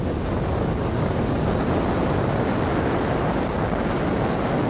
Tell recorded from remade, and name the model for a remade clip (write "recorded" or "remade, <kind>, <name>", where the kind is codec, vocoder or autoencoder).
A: recorded